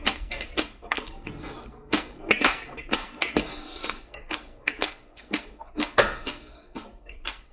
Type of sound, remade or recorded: remade